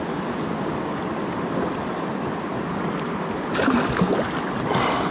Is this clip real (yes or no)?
yes